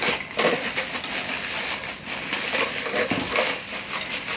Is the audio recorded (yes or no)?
yes